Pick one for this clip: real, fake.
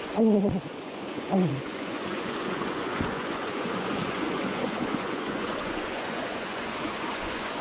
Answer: fake